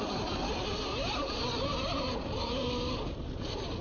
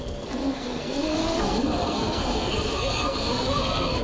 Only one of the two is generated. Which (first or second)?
second